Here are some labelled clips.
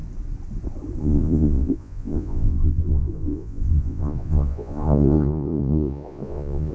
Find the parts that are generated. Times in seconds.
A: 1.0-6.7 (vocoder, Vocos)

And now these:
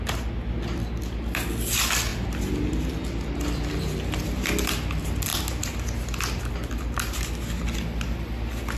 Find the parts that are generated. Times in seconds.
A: none

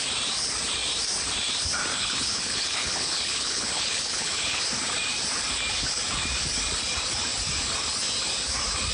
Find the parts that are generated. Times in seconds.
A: 1.9-4.6 (codec, HILCodec)

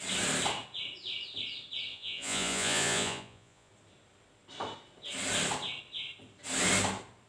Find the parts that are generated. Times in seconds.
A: 1.9-3.7 (vocoder, Vocos)

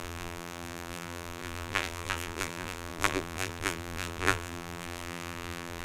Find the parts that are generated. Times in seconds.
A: 0.0-5.8 (vocoder, BigVGAN v2)

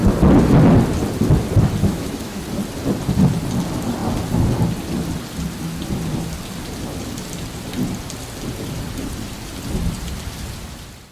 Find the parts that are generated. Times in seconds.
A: 1.8-2.4 (autoencoder, DAC-VAE)

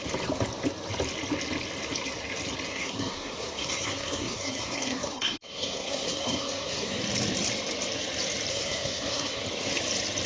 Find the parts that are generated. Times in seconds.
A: 2.7-7.0 (codec, SNAC); 8.5-9.4